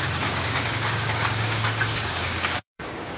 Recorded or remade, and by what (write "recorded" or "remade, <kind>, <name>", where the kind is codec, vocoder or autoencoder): remade, codec, DAC